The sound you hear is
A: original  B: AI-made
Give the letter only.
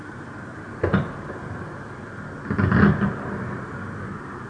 A